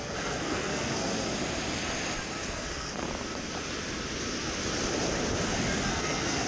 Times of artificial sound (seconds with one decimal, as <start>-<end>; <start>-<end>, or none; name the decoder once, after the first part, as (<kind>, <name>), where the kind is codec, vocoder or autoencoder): 0.0-1.3 (codec, SNAC); 2.5-3.1; 5.9-6.5